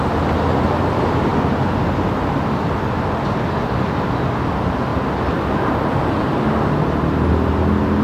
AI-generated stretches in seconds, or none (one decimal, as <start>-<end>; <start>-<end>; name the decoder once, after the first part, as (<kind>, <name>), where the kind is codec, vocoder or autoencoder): none